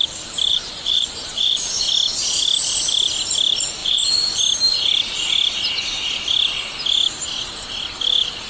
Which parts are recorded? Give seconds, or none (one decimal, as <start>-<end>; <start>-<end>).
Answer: 0.0-0.5; 1.8-3.8; 4.4-8.5